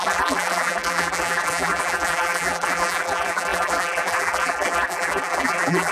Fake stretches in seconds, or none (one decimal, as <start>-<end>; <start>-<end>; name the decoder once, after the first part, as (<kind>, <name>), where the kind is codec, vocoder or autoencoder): 0.0-5.9 (vocoder, BigVGAN v2)